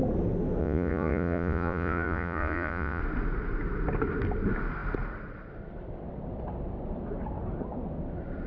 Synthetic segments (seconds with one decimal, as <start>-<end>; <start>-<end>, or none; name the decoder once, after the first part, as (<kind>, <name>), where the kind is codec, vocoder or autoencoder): 0.6-3.0 (vocoder, Vocos)